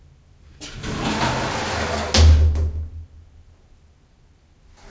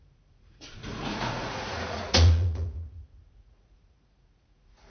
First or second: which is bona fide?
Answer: first